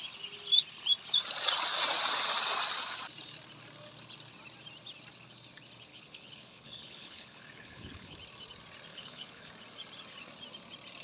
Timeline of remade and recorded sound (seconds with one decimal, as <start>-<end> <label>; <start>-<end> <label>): 0.0-5.9 recorded; 5.9-8.2 remade; 8.2-8.9 recorded; 8.9-9.5 remade; 9.5-11.0 recorded